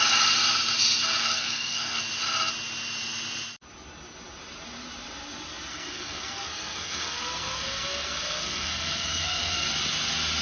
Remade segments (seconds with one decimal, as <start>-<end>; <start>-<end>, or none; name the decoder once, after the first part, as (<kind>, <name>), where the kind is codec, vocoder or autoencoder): 1.2-2.0 (codec, SNAC); 5.7-9.7